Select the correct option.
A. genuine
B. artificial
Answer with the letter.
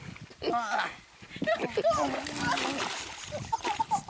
A